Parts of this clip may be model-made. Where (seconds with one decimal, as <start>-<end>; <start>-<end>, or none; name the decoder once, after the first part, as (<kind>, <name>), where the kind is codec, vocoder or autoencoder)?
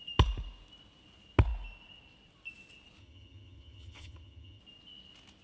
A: 3.0-4.6 (vocoder, HiFi-GAN)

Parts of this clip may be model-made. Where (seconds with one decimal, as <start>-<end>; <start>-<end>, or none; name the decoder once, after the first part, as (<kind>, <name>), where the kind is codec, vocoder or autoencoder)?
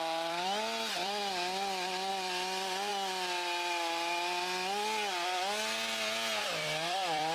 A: 0.0-2.9 (vocoder, BigVGAN v2); 6.4-7.3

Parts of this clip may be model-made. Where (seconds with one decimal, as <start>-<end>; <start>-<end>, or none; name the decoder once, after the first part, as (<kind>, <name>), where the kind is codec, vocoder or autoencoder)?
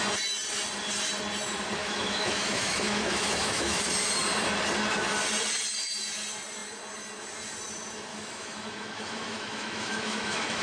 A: 1.8-3.8 (autoencoder, DAC-VAE); 8.1-10.6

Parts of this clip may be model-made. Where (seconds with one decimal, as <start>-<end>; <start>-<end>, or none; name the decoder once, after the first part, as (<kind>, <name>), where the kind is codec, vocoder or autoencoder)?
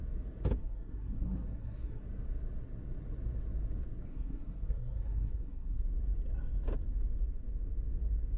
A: 0.6-2.0 (codec, SNAC); 4.1-5.8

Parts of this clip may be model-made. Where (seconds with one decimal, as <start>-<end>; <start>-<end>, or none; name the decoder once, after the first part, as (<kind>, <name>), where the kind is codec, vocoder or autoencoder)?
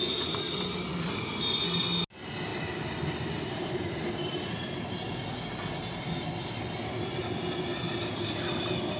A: none